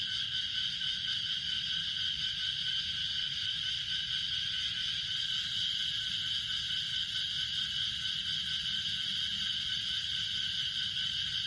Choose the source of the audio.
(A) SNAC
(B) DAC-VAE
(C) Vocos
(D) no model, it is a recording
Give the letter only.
D